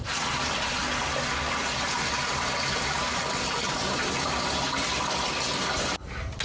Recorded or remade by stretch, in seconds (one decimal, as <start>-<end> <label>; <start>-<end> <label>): 0.0-6.4 recorded